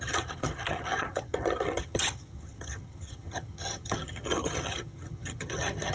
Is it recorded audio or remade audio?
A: remade